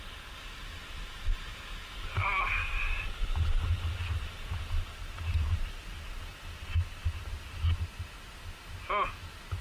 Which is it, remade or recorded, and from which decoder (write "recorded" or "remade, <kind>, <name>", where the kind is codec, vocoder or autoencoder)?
recorded